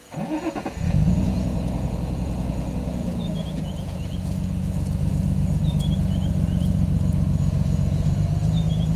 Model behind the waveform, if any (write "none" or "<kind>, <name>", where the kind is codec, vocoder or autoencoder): vocoder, Vocos